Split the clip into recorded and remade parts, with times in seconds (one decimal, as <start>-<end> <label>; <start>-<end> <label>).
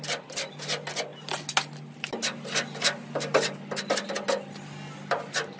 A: 0.0-5.6 recorded